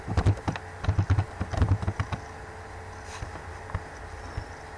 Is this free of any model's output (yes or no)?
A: yes